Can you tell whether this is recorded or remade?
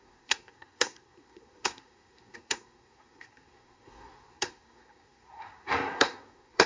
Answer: remade